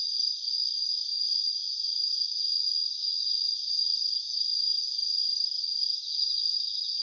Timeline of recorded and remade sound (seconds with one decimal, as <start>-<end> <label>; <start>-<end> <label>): 0.0-1.1 remade; 1.1-4.8 recorded; 4.8-5.7 remade; 5.7-7.0 recorded